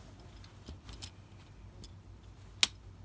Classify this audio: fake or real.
real